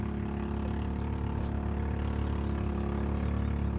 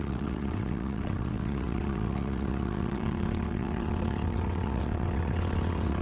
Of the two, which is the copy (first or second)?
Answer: second